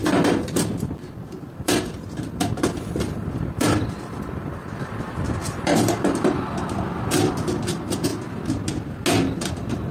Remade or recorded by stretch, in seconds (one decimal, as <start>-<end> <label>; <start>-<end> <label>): 0.0-8.1 remade; 8.1-9.5 recorded; 9.5-9.9 remade